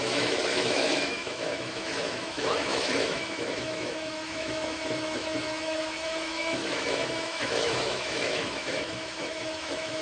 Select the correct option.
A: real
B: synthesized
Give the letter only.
B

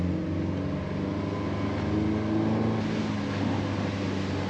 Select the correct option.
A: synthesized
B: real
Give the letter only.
B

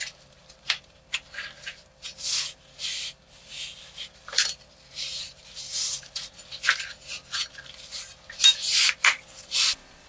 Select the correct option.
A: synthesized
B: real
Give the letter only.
B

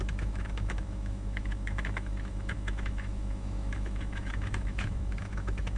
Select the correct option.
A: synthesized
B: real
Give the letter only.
A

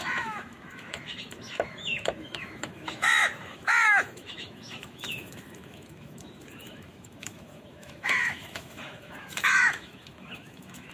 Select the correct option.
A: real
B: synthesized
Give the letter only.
B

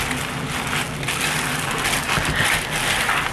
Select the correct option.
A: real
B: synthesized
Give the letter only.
A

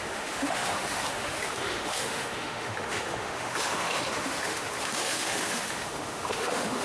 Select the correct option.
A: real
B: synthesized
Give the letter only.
B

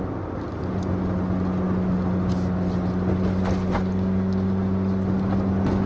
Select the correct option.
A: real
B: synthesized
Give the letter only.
A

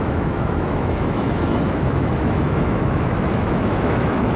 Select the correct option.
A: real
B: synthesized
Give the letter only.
B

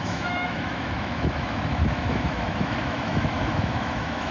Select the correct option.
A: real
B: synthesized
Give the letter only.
B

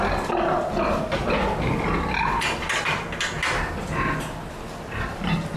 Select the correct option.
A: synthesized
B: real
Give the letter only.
B